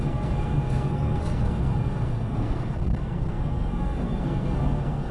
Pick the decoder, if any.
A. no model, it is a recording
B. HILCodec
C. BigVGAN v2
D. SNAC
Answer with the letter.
D